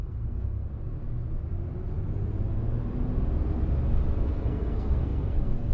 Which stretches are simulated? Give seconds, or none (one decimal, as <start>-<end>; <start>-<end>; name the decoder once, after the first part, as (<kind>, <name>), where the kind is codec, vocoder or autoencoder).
0.0-0.8 (codec, SNAC); 4.2-5.7